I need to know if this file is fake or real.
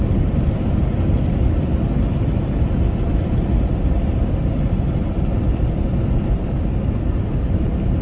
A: real